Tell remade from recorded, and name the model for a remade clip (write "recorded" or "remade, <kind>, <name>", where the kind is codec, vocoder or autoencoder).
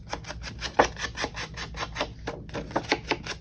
recorded